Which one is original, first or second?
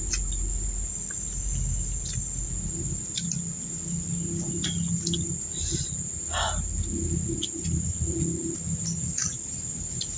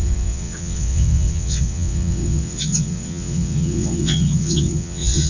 first